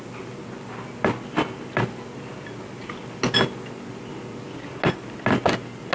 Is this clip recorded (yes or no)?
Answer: yes